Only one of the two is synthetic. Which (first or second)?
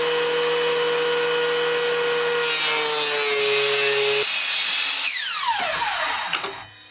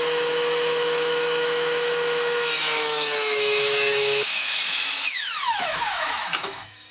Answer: second